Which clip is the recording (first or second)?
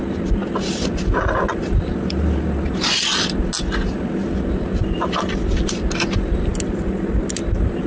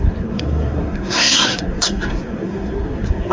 first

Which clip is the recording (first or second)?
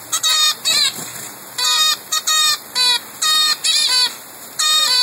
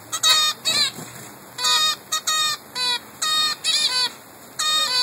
second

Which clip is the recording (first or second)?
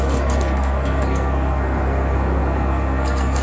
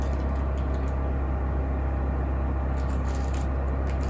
second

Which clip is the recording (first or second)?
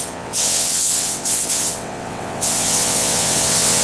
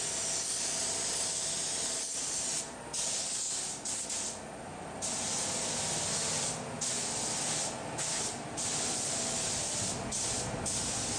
second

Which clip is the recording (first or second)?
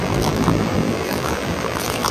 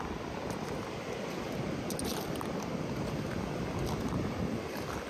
second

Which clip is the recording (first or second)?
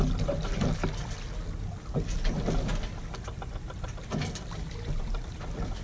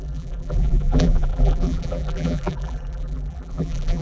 first